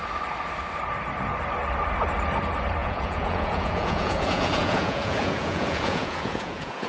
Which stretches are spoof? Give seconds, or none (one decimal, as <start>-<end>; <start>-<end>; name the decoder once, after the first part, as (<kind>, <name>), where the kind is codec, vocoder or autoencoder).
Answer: 2.8-6.9 (vocoder, Vocos)